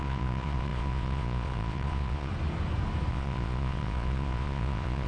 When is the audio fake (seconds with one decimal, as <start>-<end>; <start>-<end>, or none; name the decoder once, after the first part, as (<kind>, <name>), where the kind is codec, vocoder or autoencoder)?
0.0-2.3 (vocoder, Vocos); 3.1-5.1